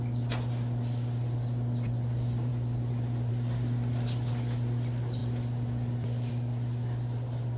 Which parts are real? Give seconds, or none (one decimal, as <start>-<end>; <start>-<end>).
0.0-7.6